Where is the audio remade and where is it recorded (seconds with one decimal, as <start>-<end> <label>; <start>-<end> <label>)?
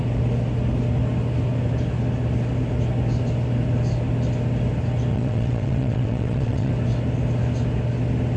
0.0-5.1 recorded; 5.1-6.7 remade; 6.7-8.4 recorded